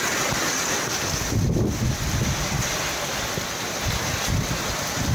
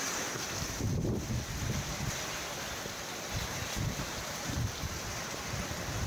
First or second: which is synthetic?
second